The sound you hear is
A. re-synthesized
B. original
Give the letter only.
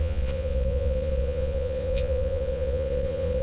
A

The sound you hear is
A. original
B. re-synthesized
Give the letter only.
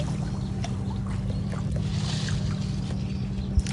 A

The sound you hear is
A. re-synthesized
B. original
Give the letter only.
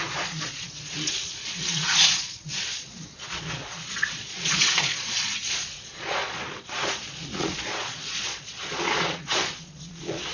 A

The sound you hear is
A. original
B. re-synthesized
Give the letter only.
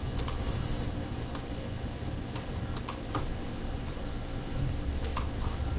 A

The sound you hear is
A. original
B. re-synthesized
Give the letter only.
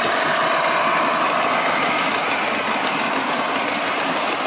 A